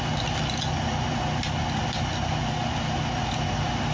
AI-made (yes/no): no